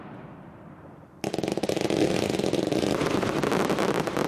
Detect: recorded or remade remade